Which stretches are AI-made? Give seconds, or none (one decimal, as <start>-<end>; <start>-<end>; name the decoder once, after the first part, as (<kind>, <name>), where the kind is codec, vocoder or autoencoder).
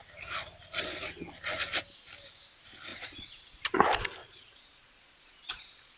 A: 2.9-3.6 (vocoder, Vocos); 4.2-6.0